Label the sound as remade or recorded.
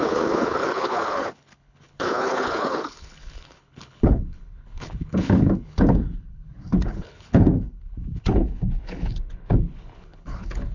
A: remade